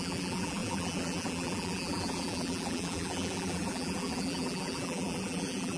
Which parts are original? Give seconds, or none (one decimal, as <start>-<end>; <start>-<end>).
none